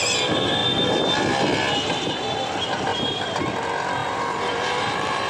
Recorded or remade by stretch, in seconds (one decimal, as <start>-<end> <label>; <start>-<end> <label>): 0.0-2.9 recorded; 2.9-3.4 remade; 3.4-4.0 recorded; 4.0-5.3 remade